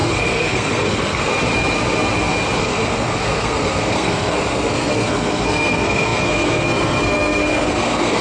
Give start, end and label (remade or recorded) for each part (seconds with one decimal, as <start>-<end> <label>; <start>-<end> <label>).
0.0-1.3 remade; 1.3-2.6 recorded; 2.6-8.2 remade